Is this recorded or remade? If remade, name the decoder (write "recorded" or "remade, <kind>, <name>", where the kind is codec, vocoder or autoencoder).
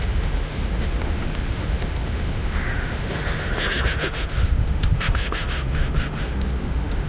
remade, autoencoder, DAC-VAE